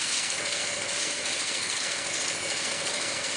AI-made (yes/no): yes